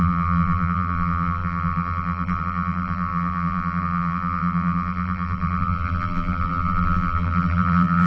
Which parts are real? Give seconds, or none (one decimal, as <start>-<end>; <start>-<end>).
none